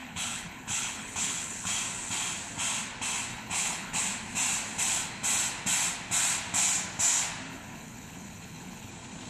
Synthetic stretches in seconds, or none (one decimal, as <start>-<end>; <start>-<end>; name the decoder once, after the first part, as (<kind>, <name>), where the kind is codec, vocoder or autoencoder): 0.0-1.7 (codec, HILCodec); 3.3-4.0; 7.5-8.9

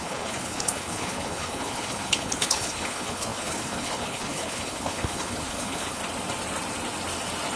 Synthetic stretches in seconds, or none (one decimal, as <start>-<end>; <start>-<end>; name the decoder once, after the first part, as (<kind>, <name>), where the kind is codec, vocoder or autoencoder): 0.0-6.0 (codec, HILCodec)

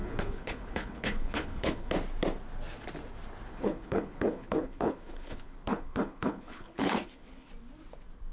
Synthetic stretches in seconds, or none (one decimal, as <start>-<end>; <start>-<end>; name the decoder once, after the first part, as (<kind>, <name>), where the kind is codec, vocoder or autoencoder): 0.0-1.9 (codec, HILCodec); 3.5-7.5

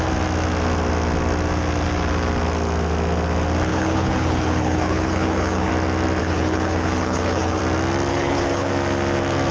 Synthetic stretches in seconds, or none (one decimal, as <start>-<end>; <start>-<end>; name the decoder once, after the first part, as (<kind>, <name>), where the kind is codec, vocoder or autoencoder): 3.7-5.7 (codec, HILCodec); 6.2-7.6; 8.1-8.7